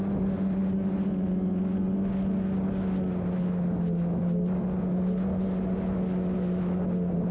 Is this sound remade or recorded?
recorded